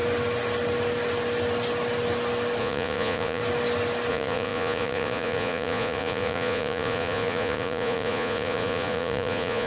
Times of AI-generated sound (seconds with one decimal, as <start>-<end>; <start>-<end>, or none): 2.6-3.4; 4.1-9.7